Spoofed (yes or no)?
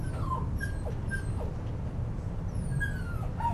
no